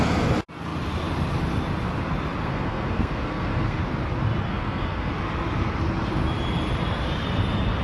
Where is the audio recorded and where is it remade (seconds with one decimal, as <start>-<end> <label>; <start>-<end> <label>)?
0.0-2.4 recorded; 2.4-3.8 remade; 3.8-4.5 recorded; 4.5-5.1 remade; 5.1-7.8 recorded